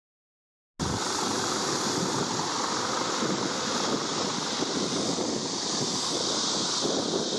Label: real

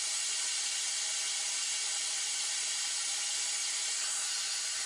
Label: real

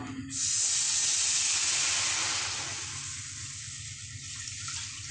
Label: real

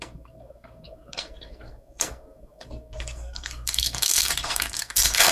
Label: fake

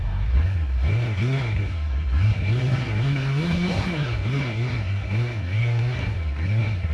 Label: fake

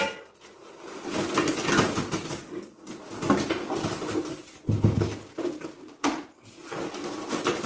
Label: real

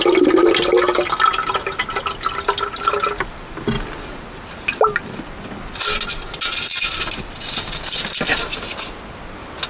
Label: real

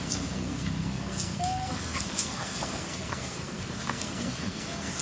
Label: fake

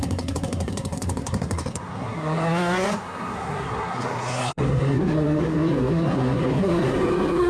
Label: fake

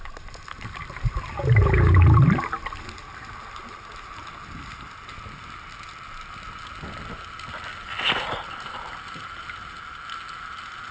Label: real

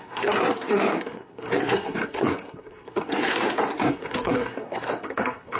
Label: fake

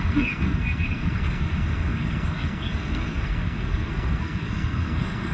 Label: fake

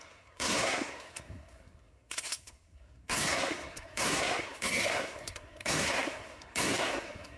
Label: fake